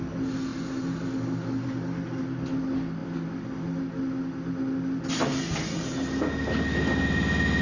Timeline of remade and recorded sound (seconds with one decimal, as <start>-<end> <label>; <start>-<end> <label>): 0.0-7.6 recorded